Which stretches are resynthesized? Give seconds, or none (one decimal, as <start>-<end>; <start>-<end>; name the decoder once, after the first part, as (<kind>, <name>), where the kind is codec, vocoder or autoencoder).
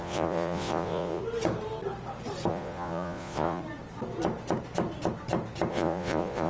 0.0-1.2 (vocoder, Vocos); 2.5-3.6; 5.7-6.5